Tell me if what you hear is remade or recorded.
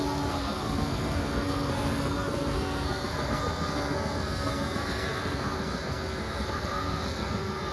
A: remade